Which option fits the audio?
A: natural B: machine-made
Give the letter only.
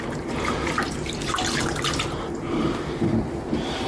A